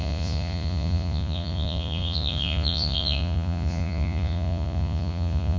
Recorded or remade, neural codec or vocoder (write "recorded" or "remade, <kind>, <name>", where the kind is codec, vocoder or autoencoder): remade, vocoder, Vocos